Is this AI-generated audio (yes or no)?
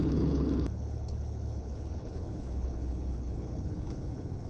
yes